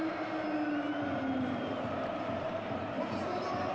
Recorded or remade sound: recorded